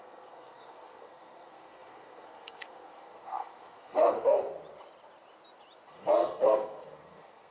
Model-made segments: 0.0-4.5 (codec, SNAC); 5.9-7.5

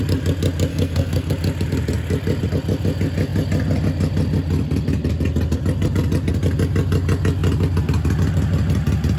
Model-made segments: 0.7-1.3 (codec, SNAC)

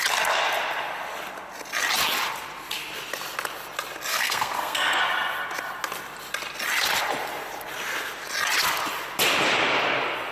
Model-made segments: 4.1-5.0 (codec, SNAC)

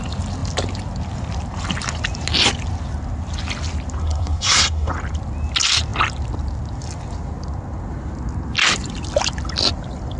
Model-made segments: 4.0-4.9 (codec, SNAC)

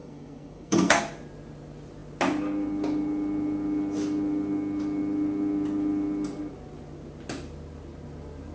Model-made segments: 0.0-1.0 (codec, SNAC)

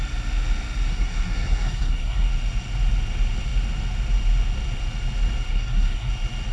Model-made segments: 0.9-2.3 (codec, SNAC); 5.5-6.1

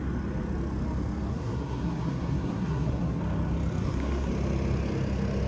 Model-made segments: 1.3-3.2 (codec, SNAC); 3.8-4.3

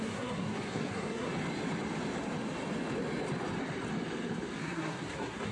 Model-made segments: 0.0-1.3 (codec, SNAC); 4.6-5.5